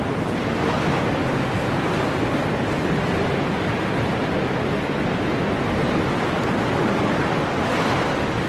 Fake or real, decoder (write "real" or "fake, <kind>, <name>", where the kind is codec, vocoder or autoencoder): real